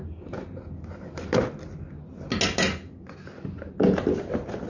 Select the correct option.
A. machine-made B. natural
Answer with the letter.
B